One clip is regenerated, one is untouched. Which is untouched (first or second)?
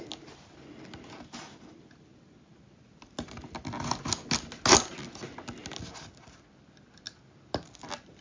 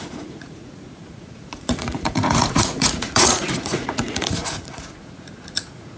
first